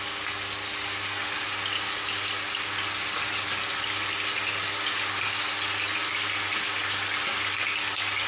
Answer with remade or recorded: recorded